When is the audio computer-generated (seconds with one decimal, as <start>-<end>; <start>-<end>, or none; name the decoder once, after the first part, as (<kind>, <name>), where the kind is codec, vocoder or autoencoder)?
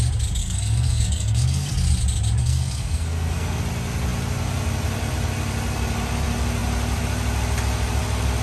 0.4-1.7 (codec, SNAC); 2.4-3.6